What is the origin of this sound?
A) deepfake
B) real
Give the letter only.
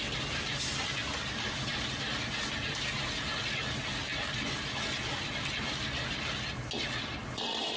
B